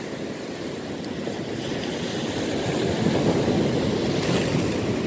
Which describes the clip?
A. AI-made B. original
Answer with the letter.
B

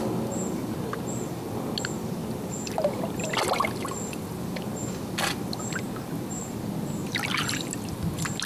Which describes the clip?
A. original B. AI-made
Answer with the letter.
A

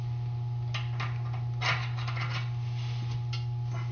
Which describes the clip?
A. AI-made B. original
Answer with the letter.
B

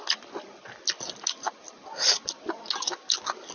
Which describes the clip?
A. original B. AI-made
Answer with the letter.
A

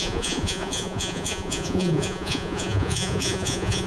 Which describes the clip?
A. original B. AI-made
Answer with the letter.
B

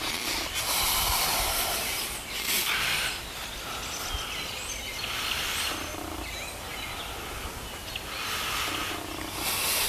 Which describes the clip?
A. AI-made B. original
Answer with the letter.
B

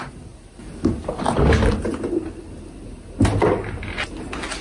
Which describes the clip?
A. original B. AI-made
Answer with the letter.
A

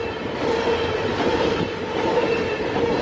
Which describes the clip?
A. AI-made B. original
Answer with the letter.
B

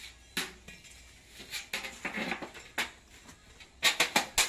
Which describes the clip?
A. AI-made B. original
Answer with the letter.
B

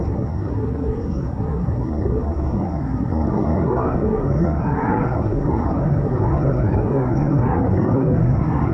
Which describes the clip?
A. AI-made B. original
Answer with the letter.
A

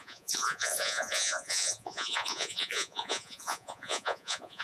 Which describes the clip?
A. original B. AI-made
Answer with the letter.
B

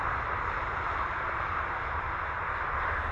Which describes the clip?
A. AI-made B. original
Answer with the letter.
A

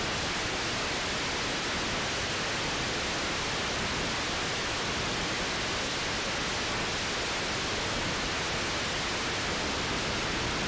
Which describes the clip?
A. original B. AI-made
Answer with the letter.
A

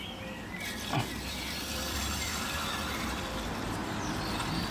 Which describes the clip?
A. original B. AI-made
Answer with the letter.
B